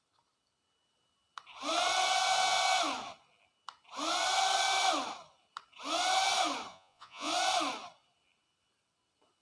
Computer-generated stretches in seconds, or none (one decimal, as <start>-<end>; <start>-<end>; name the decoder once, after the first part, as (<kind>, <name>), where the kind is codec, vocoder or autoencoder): 6.7-7.3 (vocoder, Vocos)